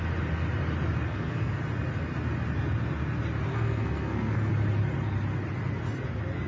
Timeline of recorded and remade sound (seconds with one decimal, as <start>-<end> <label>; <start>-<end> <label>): 0.0-1.1 recorded; 1.1-1.6 remade; 1.6-3.5 recorded; 3.5-4.5 remade; 4.5-6.5 recorded